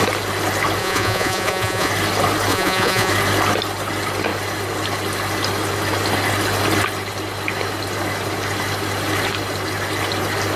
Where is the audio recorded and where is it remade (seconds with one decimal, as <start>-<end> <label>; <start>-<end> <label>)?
0.0-0.8 recorded; 0.8-1.9 remade; 1.9-2.5 recorded; 2.5-3.1 remade; 3.1-10.6 recorded